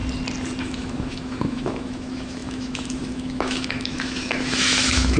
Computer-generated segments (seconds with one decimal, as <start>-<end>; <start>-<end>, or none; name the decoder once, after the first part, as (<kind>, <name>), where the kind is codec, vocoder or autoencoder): 0.6-5.2 (autoencoder, DAC-VAE)